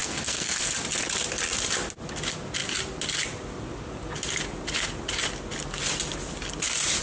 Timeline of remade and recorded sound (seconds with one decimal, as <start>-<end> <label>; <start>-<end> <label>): 0.0-0.7 remade; 0.7-7.0 recorded